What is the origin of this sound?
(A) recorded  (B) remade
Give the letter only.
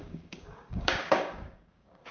B